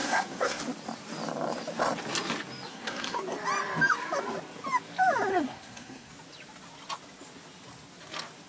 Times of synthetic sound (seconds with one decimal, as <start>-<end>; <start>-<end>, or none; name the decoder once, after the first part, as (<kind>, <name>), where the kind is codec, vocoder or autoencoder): 0.0-0.6 (codec, SNAC); 2.7-3.2; 5.3-6.1